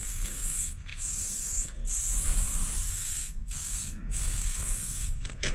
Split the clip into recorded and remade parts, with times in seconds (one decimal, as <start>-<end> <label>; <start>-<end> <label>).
0.0-1.8 remade; 1.8-2.9 recorded; 2.9-5.5 remade